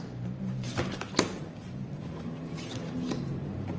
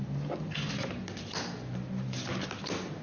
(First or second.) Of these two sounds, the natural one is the second